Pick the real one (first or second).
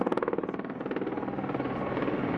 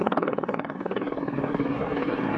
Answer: first